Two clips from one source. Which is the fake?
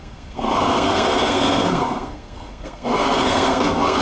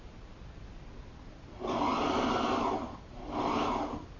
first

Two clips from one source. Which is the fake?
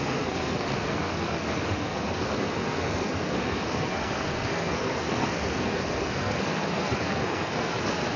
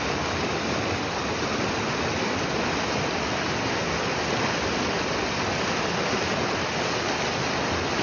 first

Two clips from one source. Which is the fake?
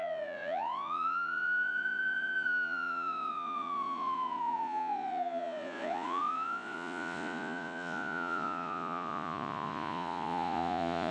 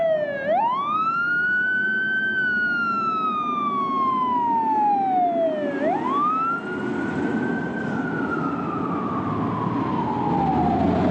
first